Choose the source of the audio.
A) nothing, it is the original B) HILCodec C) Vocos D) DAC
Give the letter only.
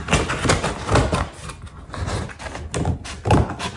A